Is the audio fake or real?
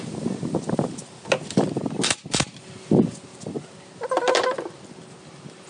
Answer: real